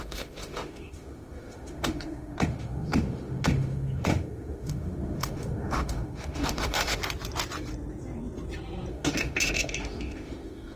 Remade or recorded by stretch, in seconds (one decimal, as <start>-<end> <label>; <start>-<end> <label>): 0.0-7.0 remade; 7.0-8.9 recorded; 8.9-10.8 remade